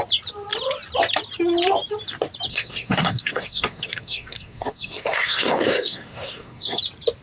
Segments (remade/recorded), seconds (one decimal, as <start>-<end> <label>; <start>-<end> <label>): 0.0-2.5 recorded; 2.5-6.8 remade; 6.8-7.2 recorded